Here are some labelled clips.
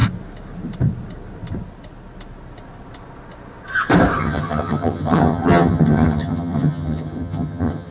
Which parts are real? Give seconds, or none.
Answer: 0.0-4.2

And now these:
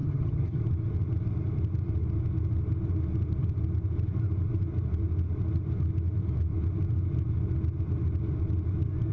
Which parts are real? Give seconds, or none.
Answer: 0.6-9.1

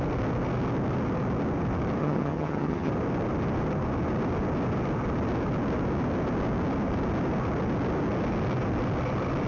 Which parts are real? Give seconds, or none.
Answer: 0.0-2.0; 2.9-9.5

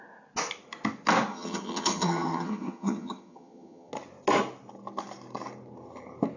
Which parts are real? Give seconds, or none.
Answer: 0.0-1.3; 3.9-6.4

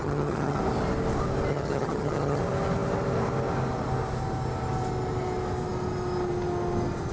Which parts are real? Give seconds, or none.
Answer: 0.6-1.5; 2.4-7.1